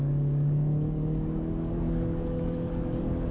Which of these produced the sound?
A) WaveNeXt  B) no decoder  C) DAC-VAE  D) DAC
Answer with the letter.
D